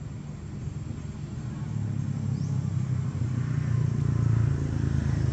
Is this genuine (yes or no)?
yes